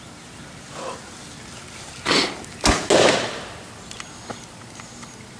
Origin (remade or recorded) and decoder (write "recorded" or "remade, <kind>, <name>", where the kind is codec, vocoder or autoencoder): recorded